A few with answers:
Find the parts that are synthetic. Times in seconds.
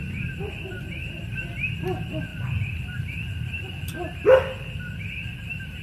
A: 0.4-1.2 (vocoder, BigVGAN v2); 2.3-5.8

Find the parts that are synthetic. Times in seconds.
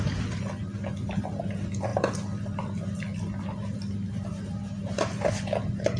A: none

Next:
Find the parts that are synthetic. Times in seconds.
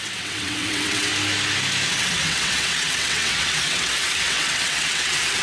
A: 0.0-1.1 (vocoder, WaveNeXt); 1.9-5.4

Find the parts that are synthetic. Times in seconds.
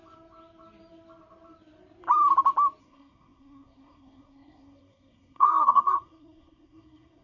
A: 2.8-7.2 (codec, SNAC)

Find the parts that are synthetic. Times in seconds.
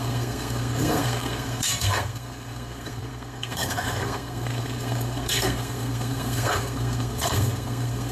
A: 0.0-8.1 (codec, SNAC)